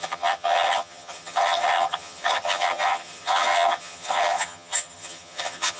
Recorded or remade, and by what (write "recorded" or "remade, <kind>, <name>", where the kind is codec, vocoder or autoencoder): remade, vocoder, HiFi-GAN